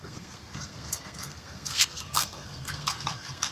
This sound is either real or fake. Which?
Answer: fake